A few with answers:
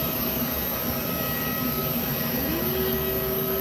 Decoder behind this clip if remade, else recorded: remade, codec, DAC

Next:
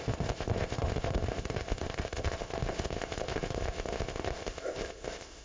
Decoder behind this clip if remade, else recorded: remade, codec, ZipCodec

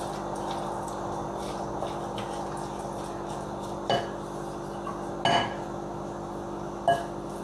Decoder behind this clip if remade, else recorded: recorded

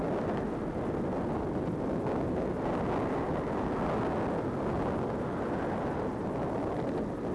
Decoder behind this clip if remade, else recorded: recorded